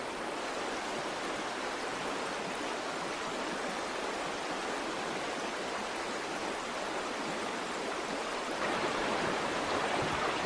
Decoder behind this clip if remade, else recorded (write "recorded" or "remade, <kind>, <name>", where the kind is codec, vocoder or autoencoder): recorded